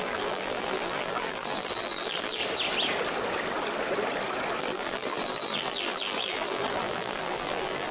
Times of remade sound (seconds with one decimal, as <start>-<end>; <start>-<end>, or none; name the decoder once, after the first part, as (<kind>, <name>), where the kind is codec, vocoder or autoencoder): 0.0-2.4 (vocoder, BigVGAN v2); 4.6-7.9